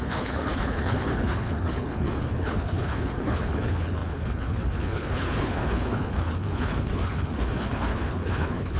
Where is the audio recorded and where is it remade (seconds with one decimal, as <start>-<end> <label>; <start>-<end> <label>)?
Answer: 0.0-8.8 remade